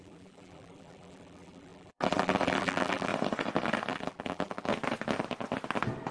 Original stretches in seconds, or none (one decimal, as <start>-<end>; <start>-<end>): 3.1-3.9; 4.7-6.1